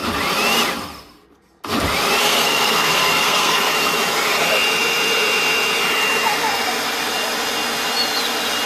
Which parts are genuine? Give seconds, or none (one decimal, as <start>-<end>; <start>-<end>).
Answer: 0.0-2.2; 3.7-8.7